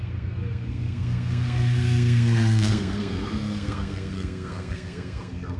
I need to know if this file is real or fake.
fake